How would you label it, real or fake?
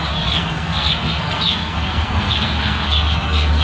fake